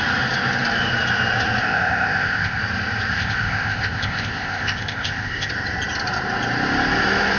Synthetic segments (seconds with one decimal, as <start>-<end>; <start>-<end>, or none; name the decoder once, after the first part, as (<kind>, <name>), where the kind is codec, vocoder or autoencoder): 1.6-2.6 (codec, ZipCodec); 3.1-5.5